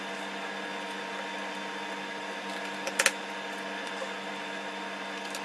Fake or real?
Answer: real